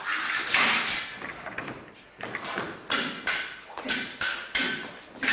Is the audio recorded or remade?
recorded